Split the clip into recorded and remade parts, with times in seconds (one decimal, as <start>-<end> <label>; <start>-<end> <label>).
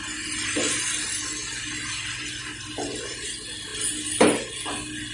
0.0-5.1 recorded